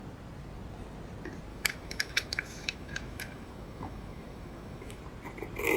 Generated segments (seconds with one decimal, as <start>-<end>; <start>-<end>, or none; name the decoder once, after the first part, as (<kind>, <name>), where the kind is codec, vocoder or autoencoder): 1.5-5.0 (autoencoder, DAC-VAE)